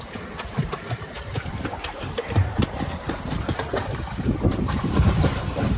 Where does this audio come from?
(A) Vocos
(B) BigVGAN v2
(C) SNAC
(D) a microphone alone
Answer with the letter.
B